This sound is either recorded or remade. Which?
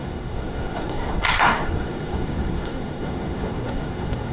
remade